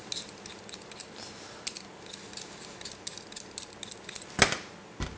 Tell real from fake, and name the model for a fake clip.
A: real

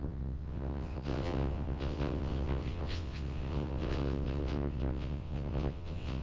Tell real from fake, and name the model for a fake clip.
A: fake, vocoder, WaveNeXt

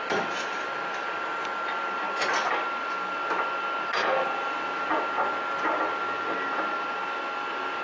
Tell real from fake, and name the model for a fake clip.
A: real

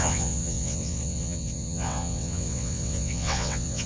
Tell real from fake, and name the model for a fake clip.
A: fake, vocoder, WaveNeXt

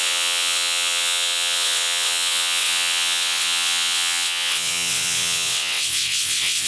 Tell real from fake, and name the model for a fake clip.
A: fake, vocoder, WaveNeXt